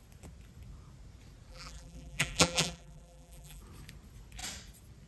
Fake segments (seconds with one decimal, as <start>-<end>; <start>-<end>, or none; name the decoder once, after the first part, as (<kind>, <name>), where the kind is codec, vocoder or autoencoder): 1.5-3.6 (vocoder, BigVGAN v2)